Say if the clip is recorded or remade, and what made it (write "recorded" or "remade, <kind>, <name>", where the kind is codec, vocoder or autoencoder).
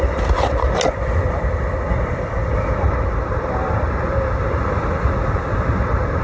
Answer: recorded